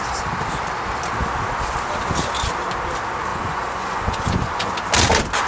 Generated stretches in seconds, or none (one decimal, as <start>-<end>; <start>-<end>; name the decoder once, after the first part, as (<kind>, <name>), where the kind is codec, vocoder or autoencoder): 3.3-4.7 (vocoder, Vocos)

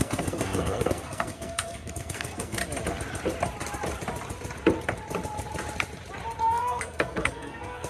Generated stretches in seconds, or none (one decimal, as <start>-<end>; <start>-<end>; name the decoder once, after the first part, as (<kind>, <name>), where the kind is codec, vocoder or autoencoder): 0.0-2.6 (codec, SNAC); 6.4-7.9

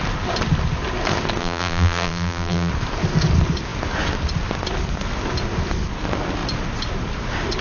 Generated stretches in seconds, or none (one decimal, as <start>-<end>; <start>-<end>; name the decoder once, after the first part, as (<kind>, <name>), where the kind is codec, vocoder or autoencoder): 1.4-2.7 (vocoder, BigVGAN v2)

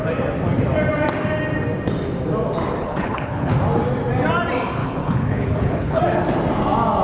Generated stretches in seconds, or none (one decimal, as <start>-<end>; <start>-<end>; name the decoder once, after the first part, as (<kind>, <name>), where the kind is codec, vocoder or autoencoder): 2.8-3.5 (codec, HILCodec); 4.8-6.0

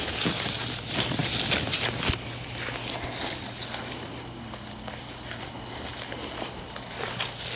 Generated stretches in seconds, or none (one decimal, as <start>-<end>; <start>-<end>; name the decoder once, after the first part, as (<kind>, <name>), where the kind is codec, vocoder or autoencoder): none

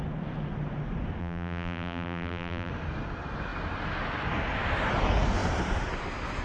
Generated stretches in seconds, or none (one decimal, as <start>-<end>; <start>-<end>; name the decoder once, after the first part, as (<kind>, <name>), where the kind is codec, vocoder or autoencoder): 1.2-2.7 (vocoder, BigVGAN v2)

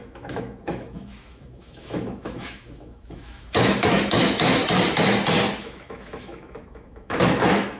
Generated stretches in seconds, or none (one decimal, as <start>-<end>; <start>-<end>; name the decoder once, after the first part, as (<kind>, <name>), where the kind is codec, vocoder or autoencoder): 0.0-4.6 (autoencoder, DAC-VAE); 5.6-7.8